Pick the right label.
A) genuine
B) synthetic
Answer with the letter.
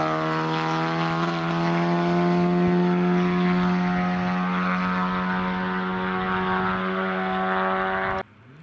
A